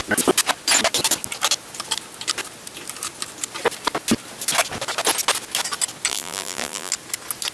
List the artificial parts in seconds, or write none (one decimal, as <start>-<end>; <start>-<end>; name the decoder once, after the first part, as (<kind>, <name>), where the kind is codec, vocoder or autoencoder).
6.1-6.9 (vocoder, BigVGAN v2)